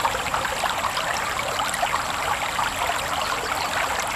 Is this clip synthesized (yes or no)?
no